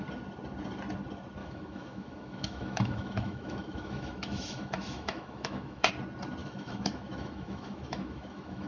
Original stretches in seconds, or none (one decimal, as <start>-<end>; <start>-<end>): 0.0-1.4; 5.9-6.4